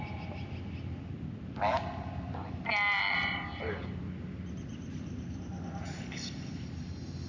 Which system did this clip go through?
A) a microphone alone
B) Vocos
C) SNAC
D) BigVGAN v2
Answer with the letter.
A